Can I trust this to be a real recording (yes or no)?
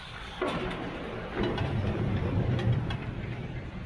no